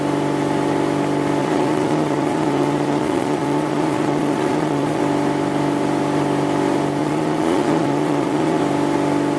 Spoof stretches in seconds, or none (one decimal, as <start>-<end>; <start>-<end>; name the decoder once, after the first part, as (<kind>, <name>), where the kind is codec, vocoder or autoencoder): 1.4-5.0 (vocoder, Vocos); 7.0-8.6

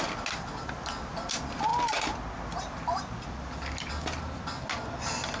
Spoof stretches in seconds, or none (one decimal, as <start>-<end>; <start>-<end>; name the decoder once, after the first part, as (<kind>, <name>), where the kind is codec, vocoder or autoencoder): none

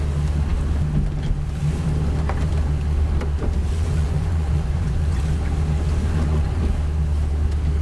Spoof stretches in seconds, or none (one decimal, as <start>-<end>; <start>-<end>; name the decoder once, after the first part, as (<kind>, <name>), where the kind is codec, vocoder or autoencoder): 3.6-5.2 (vocoder, Vocos); 6.0-6.6

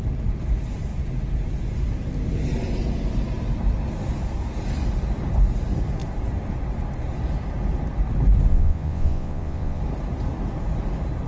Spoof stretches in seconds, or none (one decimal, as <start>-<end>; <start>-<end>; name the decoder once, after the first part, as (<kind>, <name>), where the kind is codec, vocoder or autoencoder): 8.5-9.8 (vocoder, Vocos)